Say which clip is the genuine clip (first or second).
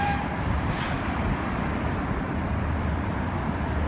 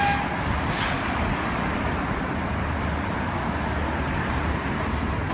second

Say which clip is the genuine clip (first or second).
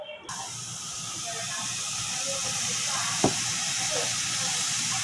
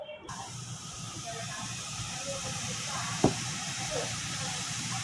first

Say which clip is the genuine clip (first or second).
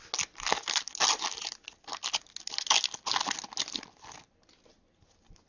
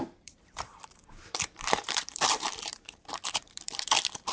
first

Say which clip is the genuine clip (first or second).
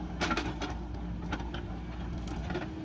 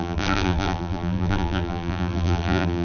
first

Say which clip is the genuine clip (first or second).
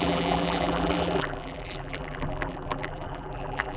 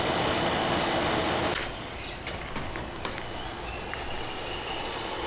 second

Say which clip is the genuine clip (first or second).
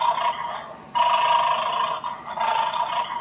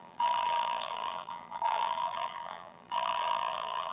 first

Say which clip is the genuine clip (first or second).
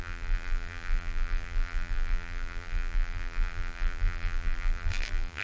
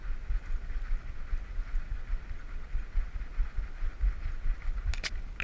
second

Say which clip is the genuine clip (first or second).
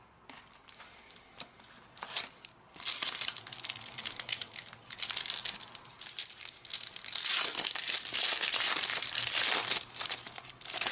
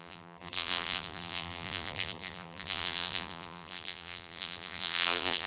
first